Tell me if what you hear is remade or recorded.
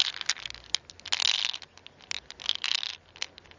recorded